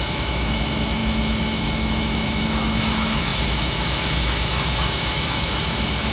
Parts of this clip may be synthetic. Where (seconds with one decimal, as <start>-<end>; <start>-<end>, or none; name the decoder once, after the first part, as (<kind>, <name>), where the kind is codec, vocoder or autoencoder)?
0.0-6.1 (autoencoder, DAC-VAE)